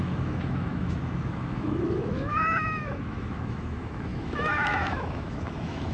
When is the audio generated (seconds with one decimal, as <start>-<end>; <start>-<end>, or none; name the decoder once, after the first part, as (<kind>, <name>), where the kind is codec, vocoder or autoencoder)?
0.0-5.9 (autoencoder, DAC-VAE)